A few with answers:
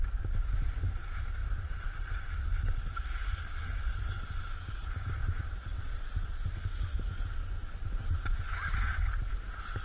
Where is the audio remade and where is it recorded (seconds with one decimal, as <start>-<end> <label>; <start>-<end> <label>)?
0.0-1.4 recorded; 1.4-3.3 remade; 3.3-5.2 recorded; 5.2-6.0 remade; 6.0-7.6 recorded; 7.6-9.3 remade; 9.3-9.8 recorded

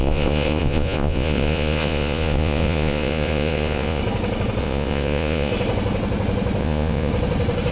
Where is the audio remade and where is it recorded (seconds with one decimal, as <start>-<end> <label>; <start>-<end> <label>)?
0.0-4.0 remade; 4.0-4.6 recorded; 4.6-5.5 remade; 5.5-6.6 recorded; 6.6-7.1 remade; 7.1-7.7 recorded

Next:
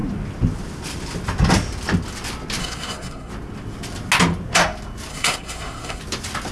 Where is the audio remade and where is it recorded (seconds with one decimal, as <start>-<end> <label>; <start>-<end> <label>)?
0.0-2.6 recorded; 2.6-3.3 remade; 3.3-5.1 recorded; 5.1-6.0 remade; 6.0-6.5 recorded

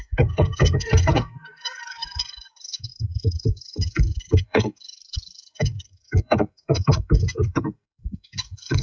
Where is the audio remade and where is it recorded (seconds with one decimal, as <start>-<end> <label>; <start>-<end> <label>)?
0.0-8.8 remade